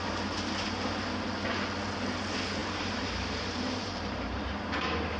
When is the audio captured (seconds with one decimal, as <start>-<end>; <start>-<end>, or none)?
0.0-2.6; 4.7-5.2